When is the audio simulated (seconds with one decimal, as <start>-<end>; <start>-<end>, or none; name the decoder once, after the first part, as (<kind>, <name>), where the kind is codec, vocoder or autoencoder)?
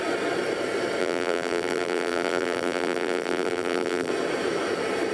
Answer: 1.0-4.1 (vocoder, BigVGAN v2)